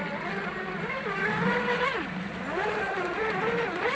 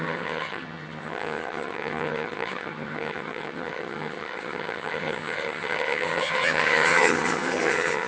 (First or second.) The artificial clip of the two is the second